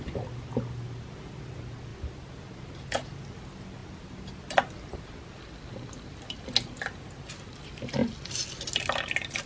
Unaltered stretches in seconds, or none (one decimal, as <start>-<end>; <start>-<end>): 0.0-9.5